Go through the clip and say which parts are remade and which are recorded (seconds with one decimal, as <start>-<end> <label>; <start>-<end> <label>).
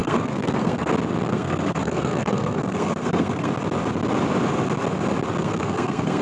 0.0-0.9 remade; 0.9-1.3 recorded; 1.3-3.5 remade; 3.5-5.4 recorded; 5.4-6.2 remade